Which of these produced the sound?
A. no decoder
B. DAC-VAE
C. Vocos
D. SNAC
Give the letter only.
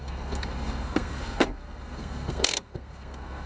D